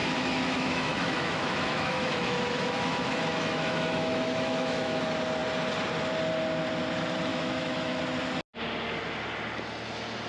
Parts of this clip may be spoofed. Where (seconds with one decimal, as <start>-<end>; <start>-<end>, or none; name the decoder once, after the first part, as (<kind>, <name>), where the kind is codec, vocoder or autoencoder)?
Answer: 0.0-5.0 (autoencoder, DAC-VAE); 7.3-8.0